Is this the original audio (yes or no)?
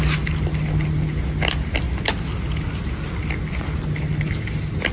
yes